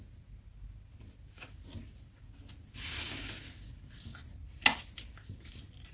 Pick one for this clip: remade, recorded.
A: recorded